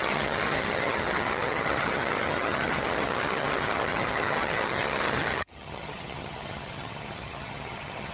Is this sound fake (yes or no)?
yes